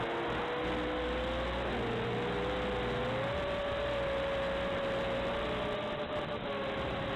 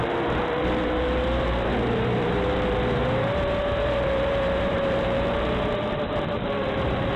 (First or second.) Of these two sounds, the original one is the first